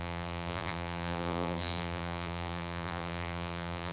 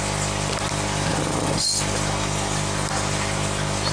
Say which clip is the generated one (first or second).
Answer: first